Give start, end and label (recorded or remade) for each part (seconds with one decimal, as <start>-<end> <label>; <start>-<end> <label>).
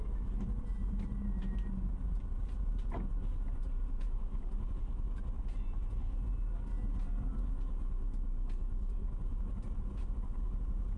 0.0-0.7 recorded; 0.7-2.7 remade; 2.7-3.6 recorded; 3.6-4.7 remade; 4.7-11.0 recorded